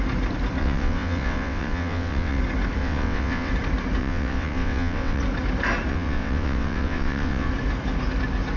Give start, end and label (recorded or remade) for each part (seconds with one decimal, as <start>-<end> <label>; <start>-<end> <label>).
0.0-0.6 recorded; 0.6-2.4 remade; 2.4-2.8 recorded; 2.8-3.5 remade; 3.5-4.0 recorded; 4.0-5.2 remade; 5.2-5.9 recorded; 5.9-7.5 remade; 7.5-8.6 recorded